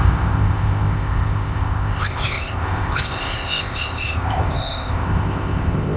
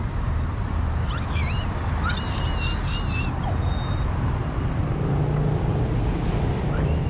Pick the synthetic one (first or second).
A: first